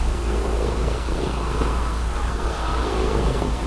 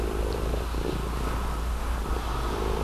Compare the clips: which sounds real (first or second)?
second